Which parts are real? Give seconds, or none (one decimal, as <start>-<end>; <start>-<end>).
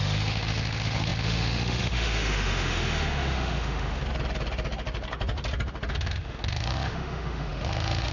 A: 4.0-5.9